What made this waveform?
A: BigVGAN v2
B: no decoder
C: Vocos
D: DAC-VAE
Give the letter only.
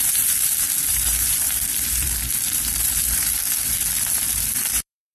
A